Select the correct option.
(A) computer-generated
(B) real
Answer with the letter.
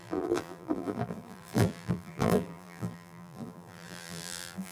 A